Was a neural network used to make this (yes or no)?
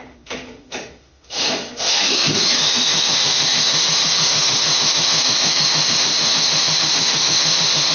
yes